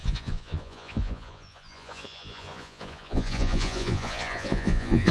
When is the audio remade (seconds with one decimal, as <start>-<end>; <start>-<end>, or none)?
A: 0.0-5.1